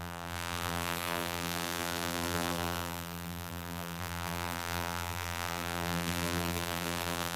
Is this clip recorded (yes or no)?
no